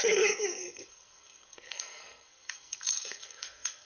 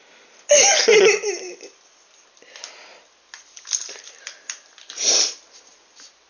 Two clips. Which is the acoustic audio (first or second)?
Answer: second